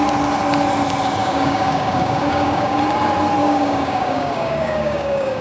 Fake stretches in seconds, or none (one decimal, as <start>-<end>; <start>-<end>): 1.2-2.8; 3.4-5.4